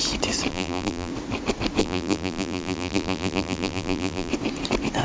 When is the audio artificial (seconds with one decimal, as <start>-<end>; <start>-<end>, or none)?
0.5-1.1; 1.8-4.3